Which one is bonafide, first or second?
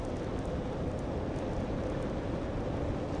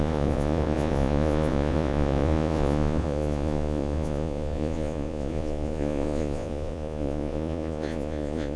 first